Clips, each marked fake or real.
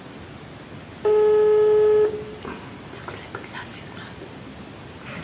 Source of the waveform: real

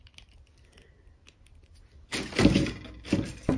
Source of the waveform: real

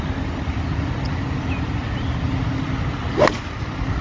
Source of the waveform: real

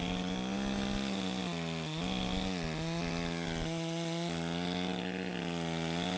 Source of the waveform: real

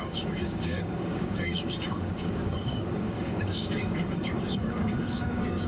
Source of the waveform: fake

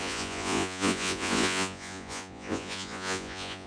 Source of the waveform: fake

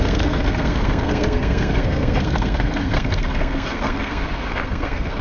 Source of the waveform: fake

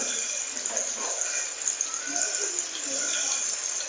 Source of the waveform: real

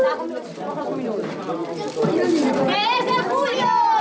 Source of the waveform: fake